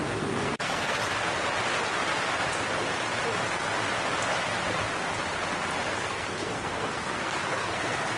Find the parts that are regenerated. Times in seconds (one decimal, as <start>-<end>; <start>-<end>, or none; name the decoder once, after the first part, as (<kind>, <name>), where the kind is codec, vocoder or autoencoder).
0.0-1.0 (codec, SNAC); 5.9-8.2